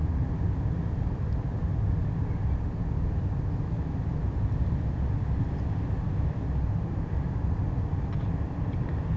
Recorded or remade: recorded